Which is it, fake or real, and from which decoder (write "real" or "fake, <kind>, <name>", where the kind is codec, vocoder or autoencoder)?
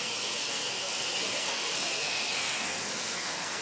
fake, codec, SNAC